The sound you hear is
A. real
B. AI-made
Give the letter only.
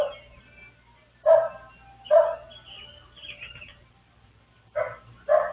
A